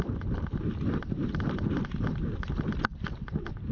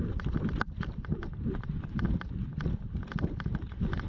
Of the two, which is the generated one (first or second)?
second